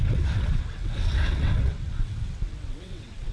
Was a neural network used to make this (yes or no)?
yes